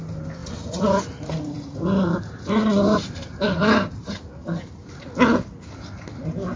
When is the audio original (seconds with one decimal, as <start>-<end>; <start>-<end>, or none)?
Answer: 0.0-0.4; 4.4-6.6

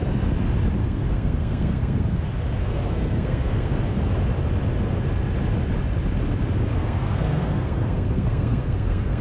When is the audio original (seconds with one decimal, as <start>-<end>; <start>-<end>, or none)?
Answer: 0.0-0.8; 2.2-2.6; 3.8-6.7

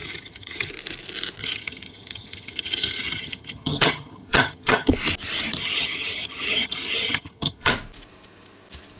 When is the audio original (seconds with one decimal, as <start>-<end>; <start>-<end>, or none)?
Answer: 0.7-1.4; 4.9-5.6; 7.7-9.0

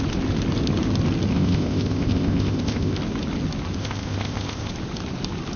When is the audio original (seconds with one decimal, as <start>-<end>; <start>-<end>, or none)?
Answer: 0.0-1.3; 3.0-3.8; 4.7-5.6

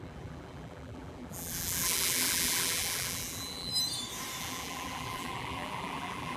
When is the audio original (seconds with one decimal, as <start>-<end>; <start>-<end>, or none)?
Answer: 3.7-4.4

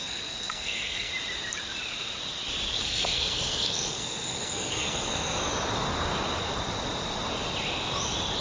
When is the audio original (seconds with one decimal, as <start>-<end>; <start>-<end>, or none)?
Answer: 1.1-2.8; 5.4-8.4